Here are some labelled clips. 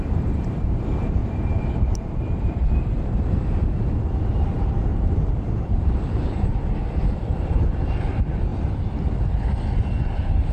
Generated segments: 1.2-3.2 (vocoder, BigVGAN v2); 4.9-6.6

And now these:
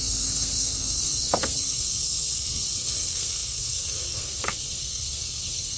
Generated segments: 0.0-5.8 (codec, SNAC)

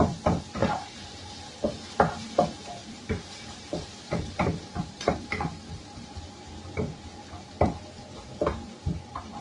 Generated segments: 0.6-1.4 (vocoder, BigVGAN v2); 2.8-6.6

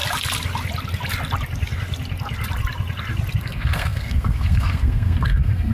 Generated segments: 3.4-5.7 (codec, SNAC)

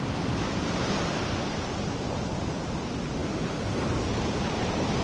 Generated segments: none

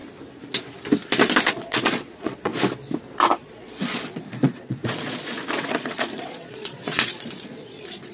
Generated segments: 1.4-2.5 (vocoder, Vocos); 3.4-8.1

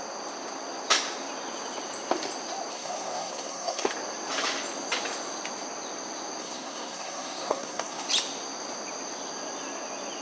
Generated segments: 2.7-3.9 (codec, SNAC); 6.4-8.1

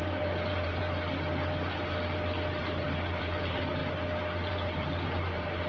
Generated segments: 0.0-0.8 (vocoder, BigVGAN v2); 2.6-3.8; 4.5-5.7